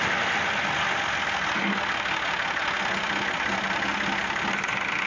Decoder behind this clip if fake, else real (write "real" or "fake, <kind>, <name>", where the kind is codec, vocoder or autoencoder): real